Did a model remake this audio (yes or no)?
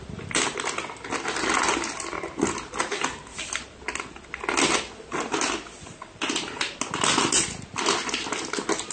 no